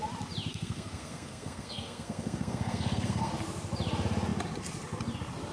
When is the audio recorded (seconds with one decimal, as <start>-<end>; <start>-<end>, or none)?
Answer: 0.0-0.5; 3.3-5.5